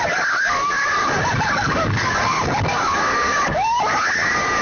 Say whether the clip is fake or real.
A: fake